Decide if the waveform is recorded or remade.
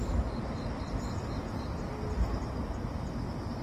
recorded